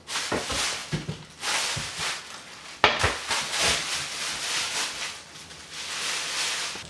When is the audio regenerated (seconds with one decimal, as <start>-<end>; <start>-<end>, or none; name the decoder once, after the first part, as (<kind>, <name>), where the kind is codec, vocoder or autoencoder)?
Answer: none